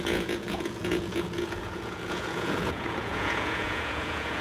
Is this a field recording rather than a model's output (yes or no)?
no